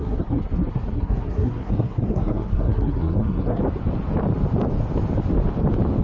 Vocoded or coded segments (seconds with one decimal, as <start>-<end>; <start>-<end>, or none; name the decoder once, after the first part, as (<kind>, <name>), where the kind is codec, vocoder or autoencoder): 0.0-3.6 (codec, SNAC)